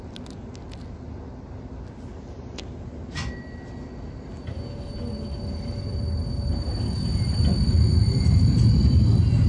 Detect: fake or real real